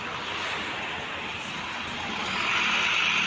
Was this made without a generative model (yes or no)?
yes